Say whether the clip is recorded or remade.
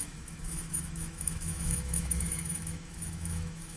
remade